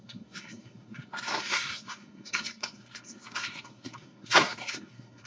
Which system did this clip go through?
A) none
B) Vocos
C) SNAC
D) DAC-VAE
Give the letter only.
C